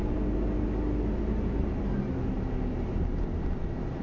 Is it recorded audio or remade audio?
recorded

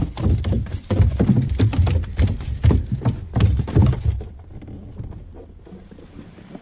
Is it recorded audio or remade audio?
recorded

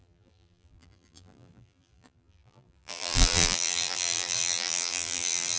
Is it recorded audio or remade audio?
remade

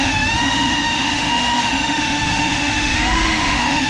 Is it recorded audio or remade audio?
remade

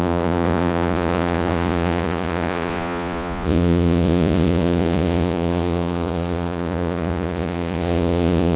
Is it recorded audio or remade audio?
remade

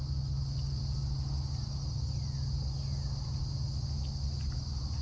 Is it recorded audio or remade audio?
recorded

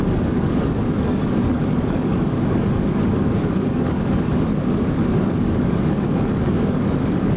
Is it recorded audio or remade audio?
remade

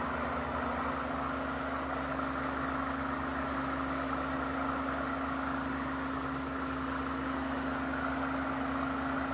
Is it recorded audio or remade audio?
recorded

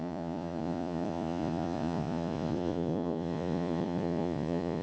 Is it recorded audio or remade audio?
remade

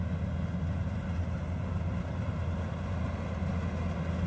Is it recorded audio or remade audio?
recorded